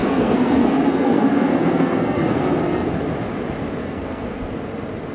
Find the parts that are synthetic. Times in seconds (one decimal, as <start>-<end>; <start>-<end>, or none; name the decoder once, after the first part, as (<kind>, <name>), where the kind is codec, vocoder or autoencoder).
0.0-3.0 (codec, SNAC); 3.8-4.5